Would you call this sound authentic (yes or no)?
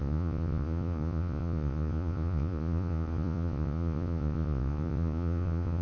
no